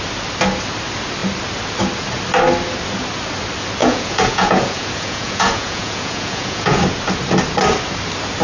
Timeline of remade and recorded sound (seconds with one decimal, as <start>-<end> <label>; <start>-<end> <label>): 0.0-3.8 recorded; 3.8-6.8 remade; 6.8-8.4 recorded